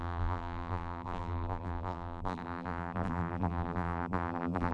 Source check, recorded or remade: remade